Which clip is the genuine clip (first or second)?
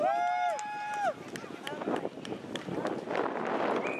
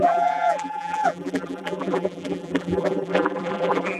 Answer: first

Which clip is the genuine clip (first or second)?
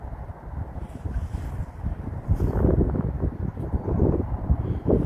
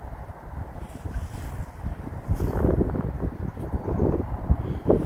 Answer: first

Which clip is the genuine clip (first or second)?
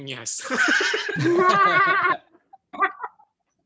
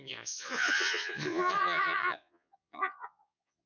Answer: first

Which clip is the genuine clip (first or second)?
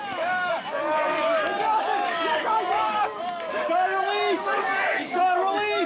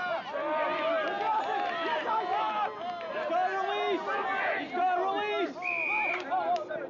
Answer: second